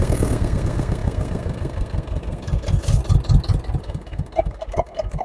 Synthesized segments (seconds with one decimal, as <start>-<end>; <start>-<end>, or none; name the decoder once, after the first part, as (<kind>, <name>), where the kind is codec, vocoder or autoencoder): 0.0-3.0 (codec, SNAC); 3.8-5.2